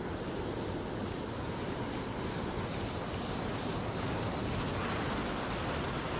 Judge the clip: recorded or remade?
recorded